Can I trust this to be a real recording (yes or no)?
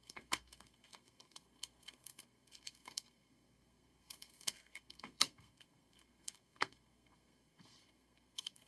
no